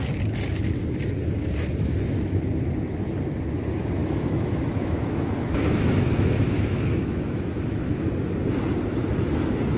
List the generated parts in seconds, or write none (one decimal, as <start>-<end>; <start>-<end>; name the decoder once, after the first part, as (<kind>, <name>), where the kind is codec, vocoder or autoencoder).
4.0-7.9 (autoencoder, DAC-VAE)